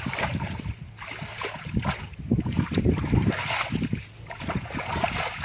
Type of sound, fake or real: real